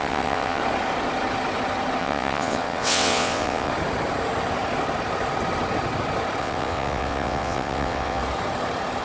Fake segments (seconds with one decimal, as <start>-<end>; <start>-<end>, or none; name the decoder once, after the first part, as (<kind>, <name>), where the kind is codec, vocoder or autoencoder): 0.0-0.6 (vocoder, WaveNeXt); 2.0-3.7; 6.4-8.2

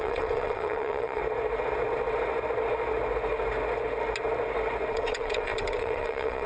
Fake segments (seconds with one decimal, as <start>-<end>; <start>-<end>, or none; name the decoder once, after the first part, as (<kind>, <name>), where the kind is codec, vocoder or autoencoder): 0.0-1.2 (vocoder, WaveNeXt); 4.9-6.5